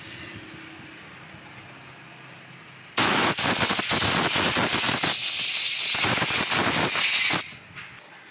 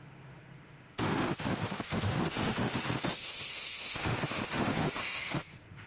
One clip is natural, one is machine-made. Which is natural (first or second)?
first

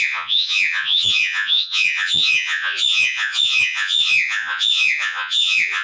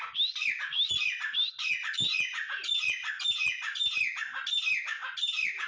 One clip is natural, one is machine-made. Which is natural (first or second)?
second